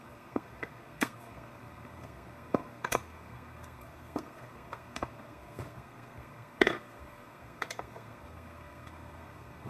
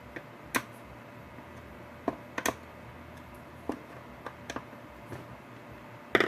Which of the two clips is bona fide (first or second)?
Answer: second